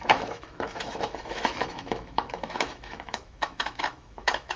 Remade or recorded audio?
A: remade